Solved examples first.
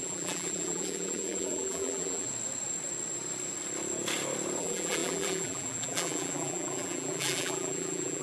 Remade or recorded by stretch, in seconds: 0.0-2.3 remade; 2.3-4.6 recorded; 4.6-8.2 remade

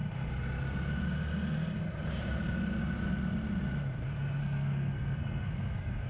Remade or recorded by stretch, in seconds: 0.0-4.4 recorded; 4.4-6.1 remade